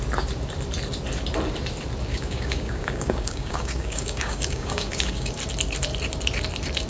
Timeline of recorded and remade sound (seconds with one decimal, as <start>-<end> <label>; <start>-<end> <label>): 0.0-2.1 recorded; 2.1-5.3 remade; 5.3-6.9 recorded

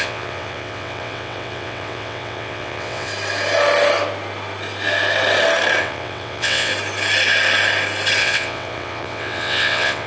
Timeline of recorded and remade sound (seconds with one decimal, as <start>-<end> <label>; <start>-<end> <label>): 0.0-3.1 remade; 3.1-5.8 recorded; 5.8-6.7 remade; 6.7-8.2 recorded; 8.2-10.1 remade

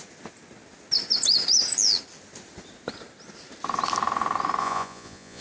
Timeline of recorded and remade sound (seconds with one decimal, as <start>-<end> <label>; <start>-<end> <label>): 0.0-4.6 recorded; 4.6-5.4 remade

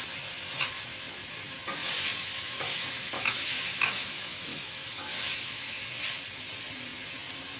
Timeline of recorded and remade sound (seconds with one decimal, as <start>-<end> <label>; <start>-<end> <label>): 0.0-2.2 recorded; 2.2-5.8 remade; 5.8-7.6 recorded

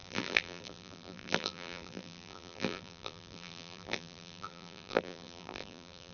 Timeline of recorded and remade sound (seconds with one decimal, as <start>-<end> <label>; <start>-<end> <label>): 0.0-6.1 remade

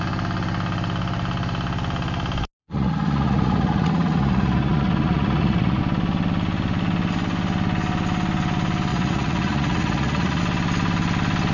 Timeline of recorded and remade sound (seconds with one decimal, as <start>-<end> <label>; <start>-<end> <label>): 0.0-2.6 recorded; 2.6-5.8 remade; 5.8-8.9 recorded; 8.9-10.4 remade; 10.4-11.5 recorded

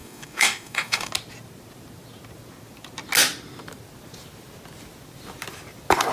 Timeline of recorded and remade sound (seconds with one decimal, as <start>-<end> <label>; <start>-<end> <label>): 0.0-1.1 remade; 1.1-6.1 recorded

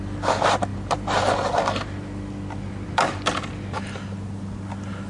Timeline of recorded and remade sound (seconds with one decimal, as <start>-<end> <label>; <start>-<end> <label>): 0.0-5.1 recorded